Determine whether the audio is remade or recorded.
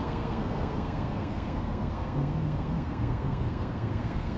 remade